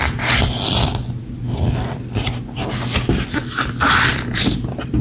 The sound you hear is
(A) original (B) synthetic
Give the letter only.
A